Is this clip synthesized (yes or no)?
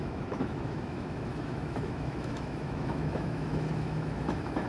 yes